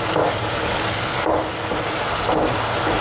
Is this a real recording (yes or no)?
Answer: yes